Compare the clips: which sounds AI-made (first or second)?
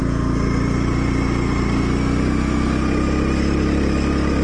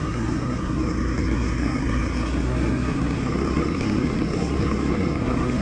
second